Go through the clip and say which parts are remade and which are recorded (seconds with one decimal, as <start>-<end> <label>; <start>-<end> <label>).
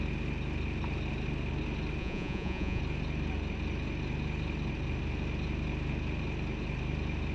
0.0-2.0 recorded; 2.0-2.8 remade; 2.8-7.3 recorded